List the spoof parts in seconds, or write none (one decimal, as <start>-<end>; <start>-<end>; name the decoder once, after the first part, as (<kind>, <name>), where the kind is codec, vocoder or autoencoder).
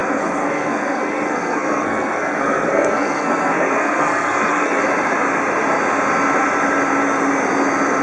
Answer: 0.0-4.8 (codec, SNAC)